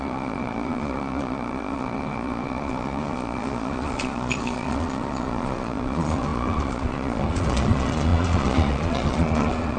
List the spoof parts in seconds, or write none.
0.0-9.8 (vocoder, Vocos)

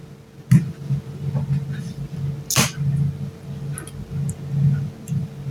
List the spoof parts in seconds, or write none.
none

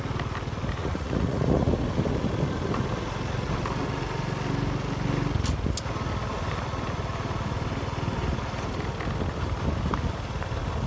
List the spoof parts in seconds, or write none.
0.8-1.7 (vocoder, Vocos)

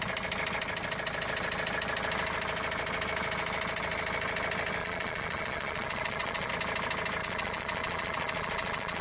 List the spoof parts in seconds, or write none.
4.8-6.5 (vocoder, Vocos); 7.2-9.0

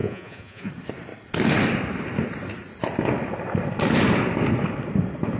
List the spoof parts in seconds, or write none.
0.0-0.7 (vocoder, Vocos)

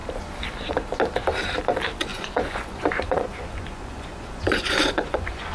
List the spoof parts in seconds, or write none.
2.1-5.5 (vocoder, Vocos)